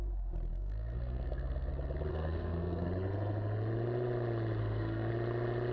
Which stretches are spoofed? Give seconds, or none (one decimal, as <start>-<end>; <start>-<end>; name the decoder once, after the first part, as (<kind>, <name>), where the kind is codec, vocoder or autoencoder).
0.5-1.7 (codec, SNAC); 2.1-2.9; 4.6-5.1